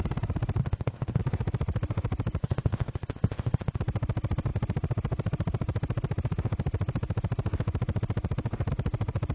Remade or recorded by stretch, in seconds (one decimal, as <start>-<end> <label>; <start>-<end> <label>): 0.0-0.6 recorded; 0.6-1.2 remade; 1.2-2.4 recorded; 2.4-3.8 remade; 3.8-9.3 recorded